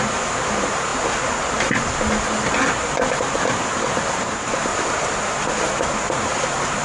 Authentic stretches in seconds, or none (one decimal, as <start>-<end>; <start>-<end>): 0.9-2.7; 4.7-5.7